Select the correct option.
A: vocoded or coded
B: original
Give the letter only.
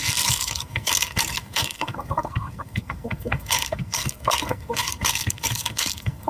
A